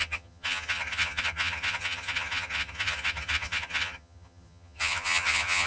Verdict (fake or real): fake